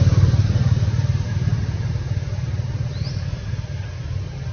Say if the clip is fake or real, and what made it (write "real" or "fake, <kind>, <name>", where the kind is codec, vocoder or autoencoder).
fake, vocoder, BigVGAN v2